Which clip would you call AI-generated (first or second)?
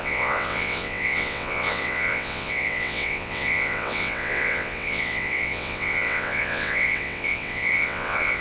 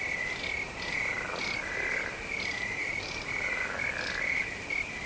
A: first